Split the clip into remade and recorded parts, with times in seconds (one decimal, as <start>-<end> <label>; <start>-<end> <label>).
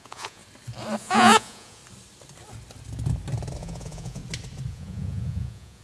0.0-0.4 remade; 0.4-1.0 recorded; 1.0-1.8 remade; 1.8-3.6 recorded; 3.6-4.2 remade; 4.2-4.7 recorded; 4.7-5.8 remade